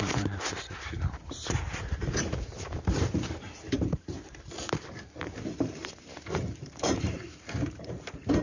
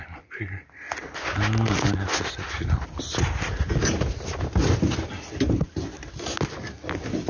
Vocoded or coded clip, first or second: first